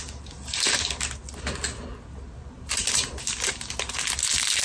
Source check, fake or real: real